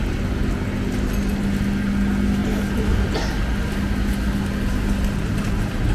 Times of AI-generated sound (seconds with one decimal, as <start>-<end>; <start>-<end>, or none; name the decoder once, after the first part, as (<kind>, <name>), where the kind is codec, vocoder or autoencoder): none